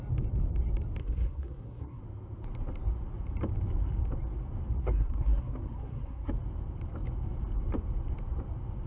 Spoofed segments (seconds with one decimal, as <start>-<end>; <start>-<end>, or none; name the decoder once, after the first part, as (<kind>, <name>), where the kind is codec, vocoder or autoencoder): 1.0-2.0 (codec, SNAC); 4.8-6.3